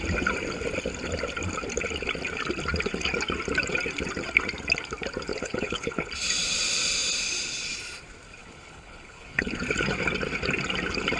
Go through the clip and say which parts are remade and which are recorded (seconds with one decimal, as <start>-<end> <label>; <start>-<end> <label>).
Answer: 0.0-5.3 recorded; 5.3-6.1 remade; 6.1-8.4 recorded; 8.4-9.6 remade; 9.6-11.2 recorded